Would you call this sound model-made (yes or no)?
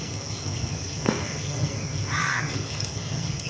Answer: yes